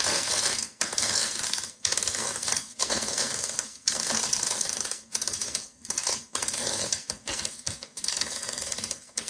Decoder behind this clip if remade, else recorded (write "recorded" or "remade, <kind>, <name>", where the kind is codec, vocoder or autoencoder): remade, codec, SNAC